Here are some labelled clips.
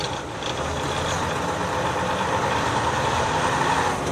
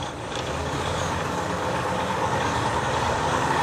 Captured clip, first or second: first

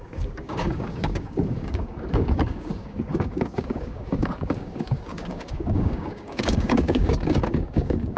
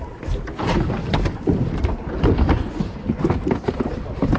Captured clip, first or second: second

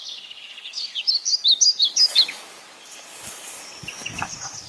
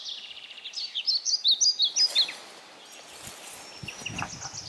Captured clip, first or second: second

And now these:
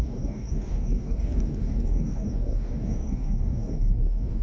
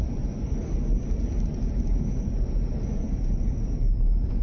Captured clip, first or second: second